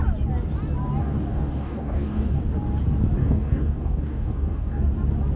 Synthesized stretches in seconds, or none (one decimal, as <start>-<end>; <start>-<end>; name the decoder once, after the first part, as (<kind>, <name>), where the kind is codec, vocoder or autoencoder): 1.0-2.4 (codec, DAC); 3.2-4.8